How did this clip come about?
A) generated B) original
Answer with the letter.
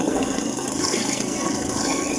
A